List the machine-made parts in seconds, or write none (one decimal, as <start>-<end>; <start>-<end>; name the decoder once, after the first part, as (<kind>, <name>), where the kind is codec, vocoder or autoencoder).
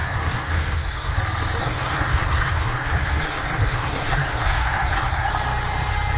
0.0-1.2 (codec, SNAC); 1.6-5.3